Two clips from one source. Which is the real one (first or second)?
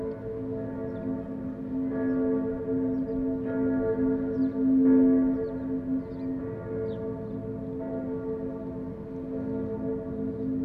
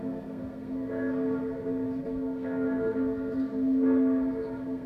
first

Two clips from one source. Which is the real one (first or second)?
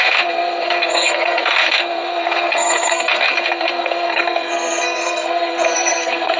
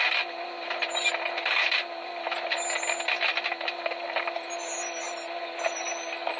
second